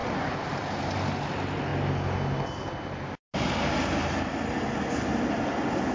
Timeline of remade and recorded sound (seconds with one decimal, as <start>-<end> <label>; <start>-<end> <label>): 0.0-1.2 remade; 1.2-5.9 recorded